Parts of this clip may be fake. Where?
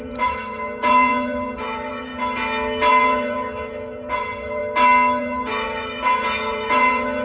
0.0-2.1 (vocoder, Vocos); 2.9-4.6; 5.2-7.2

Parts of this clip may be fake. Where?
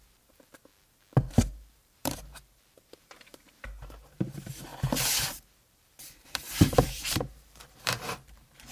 0.0-0.7 (vocoder, BigVGAN v2); 1.3-8.7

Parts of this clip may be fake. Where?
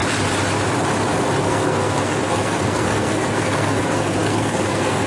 1.4-5.1 (codec, SNAC)